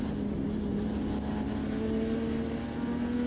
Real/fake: real